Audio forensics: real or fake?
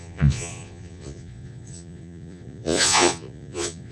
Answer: fake